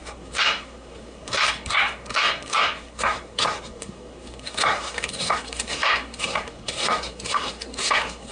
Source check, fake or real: fake